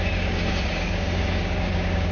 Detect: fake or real fake